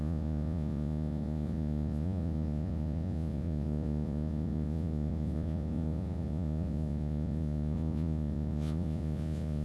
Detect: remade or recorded remade